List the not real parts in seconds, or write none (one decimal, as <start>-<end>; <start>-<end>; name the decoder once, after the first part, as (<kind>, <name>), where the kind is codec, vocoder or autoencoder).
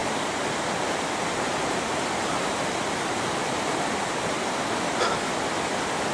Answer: none